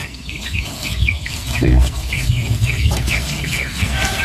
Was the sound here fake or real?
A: fake